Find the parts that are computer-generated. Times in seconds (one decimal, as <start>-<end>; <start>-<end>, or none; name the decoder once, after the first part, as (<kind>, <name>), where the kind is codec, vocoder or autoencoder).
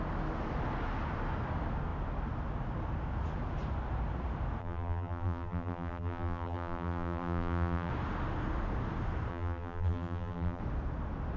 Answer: 4.6-7.9 (vocoder, BigVGAN v2); 9.3-10.6